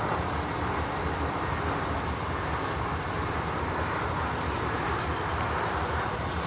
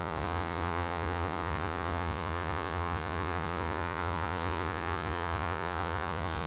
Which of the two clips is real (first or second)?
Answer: first